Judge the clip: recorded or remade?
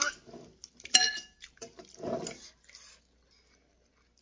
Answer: recorded